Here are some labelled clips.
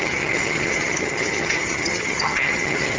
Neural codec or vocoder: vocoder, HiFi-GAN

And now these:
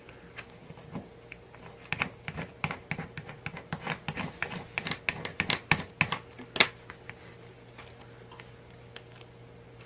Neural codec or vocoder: none